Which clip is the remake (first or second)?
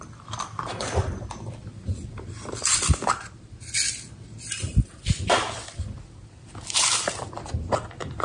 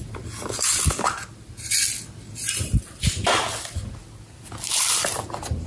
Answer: first